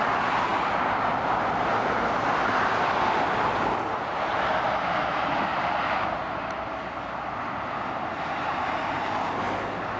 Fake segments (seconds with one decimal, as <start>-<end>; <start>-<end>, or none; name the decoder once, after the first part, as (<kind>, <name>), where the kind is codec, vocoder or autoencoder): none